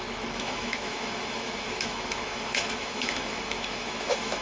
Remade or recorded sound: remade